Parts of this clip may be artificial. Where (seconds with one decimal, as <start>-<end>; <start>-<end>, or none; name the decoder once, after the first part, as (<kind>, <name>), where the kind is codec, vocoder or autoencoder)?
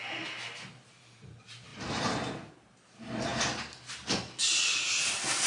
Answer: 1.7-2.5 (vocoder, BigVGAN v2)